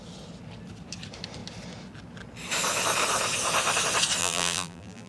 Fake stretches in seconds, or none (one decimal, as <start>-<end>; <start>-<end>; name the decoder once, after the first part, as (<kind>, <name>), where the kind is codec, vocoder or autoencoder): 4.2-5.1 (vocoder, BigVGAN v2)